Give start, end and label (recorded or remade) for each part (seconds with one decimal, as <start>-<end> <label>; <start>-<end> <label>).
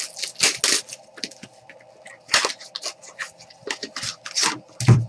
0.0-5.1 recorded